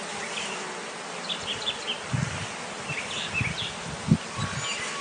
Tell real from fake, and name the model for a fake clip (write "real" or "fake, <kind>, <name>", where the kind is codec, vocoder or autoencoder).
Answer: real